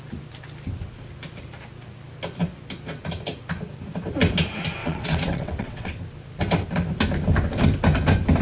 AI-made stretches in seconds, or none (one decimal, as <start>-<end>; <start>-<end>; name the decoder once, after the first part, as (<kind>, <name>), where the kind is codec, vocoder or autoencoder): 4.8-6.0 (vocoder, WaveNeXt)